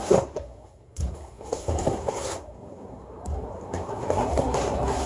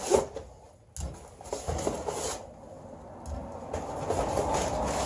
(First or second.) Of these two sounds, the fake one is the first